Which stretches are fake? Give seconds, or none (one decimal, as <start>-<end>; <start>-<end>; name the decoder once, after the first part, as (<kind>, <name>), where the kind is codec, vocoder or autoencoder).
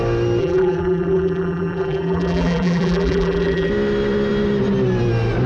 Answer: 0.4-3.7 (vocoder, BigVGAN v2)